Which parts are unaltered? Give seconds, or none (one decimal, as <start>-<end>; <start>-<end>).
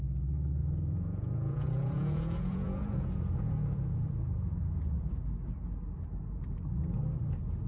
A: 0.0-0.6; 5.2-7.7